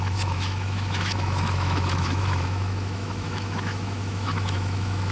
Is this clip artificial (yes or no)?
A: yes